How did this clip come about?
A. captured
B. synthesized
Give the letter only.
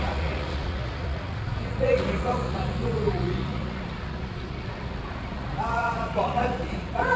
B